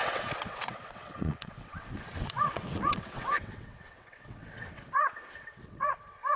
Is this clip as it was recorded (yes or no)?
no